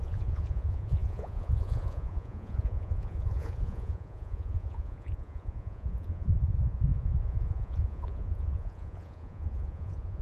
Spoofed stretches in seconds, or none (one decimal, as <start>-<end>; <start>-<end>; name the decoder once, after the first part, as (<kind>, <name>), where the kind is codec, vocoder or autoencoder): 0.0-10.2 (vocoder, Vocos)